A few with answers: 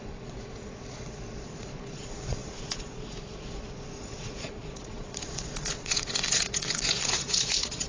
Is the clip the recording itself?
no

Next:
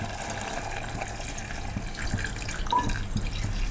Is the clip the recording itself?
yes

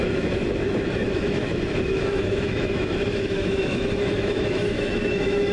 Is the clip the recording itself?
no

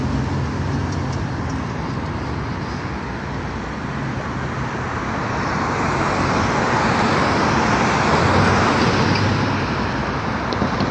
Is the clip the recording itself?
yes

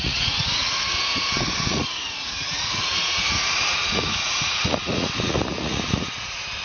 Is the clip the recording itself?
no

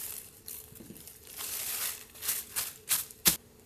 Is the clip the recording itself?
no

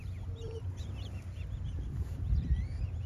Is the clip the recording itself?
no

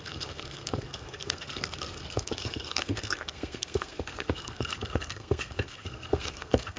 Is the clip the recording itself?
no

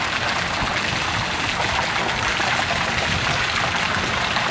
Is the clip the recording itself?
yes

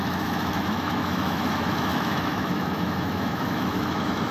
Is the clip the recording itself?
no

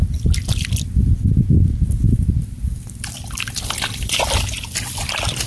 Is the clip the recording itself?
yes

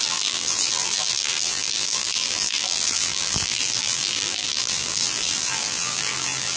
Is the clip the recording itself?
no